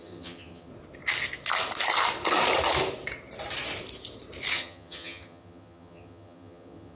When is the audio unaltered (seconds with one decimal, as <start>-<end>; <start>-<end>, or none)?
0.7-4.5